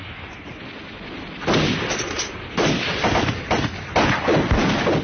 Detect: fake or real real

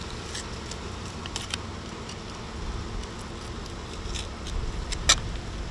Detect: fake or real real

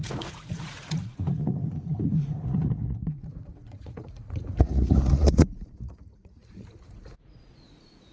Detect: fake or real fake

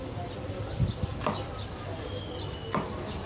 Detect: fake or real real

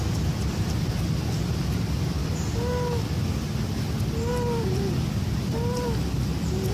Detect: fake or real real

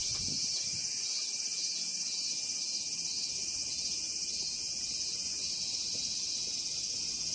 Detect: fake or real real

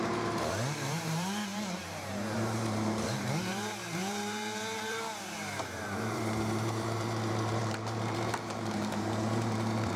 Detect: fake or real fake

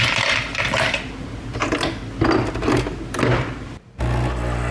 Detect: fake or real real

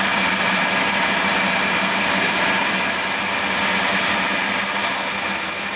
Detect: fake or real real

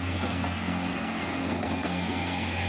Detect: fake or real fake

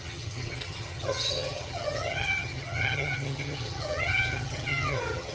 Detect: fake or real fake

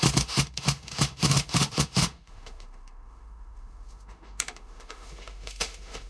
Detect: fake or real fake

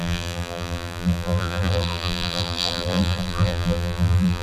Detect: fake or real fake